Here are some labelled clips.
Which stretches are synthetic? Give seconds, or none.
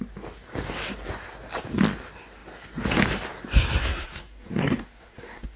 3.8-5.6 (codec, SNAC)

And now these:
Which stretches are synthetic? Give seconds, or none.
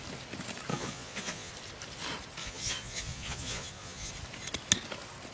0.7-1.5 (vocoder, Vocos); 2.4-4.1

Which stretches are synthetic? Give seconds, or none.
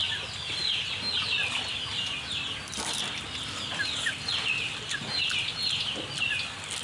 none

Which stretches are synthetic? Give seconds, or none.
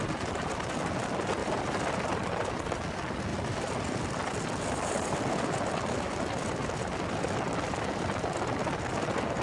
1.4-2.5 (vocoder, BigVGAN v2); 3.3-5.7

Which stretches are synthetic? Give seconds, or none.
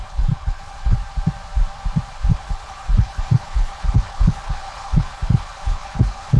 0.0-1.0 (codec, HILCodec); 2.3-6.4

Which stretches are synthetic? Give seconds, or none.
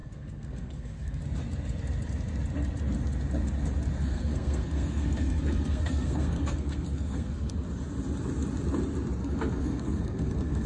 0.0-1.2 (codec, SNAC); 4.0-7.5; 9.2-10.7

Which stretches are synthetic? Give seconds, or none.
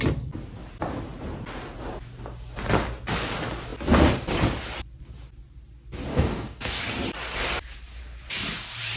6.1-6.8 (codec, DAC)